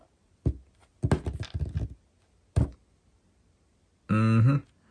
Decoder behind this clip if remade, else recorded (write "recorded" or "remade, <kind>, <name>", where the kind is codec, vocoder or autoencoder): recorded